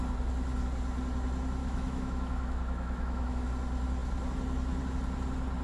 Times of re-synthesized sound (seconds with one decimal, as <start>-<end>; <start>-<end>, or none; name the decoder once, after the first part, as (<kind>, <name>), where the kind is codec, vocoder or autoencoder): 1.6-3.5 (autoencoder, DAC-VAE)